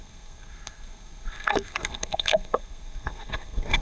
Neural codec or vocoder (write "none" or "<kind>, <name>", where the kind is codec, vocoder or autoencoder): codec, SNAC